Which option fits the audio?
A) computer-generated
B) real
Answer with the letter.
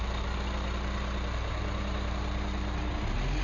B